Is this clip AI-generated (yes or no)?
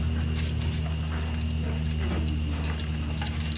no